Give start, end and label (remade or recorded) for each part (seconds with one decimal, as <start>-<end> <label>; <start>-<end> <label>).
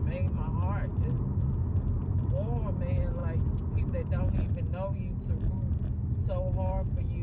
0.0-7.2 recorded